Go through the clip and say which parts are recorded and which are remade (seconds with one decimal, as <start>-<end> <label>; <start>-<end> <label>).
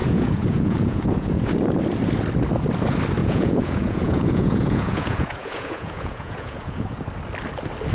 0.0-1.5 remade; 1.5-3.2 recorded; 3.2-7.0 remade; 7.0-7.9 recorded